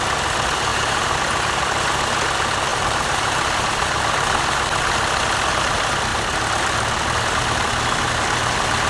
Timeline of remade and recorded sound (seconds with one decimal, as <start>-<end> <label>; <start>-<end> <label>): 0.0-0.7 recorded; 0.7-1.2 remade; 1.2-2.7 recorded; 2.7-4.3 remade; 4.3-8.9 recorded